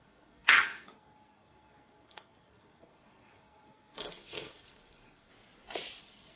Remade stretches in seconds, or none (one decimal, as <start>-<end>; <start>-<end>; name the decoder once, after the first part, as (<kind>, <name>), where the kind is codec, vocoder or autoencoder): 0.0-5.3 (codec, SNAC); 6.0-6.4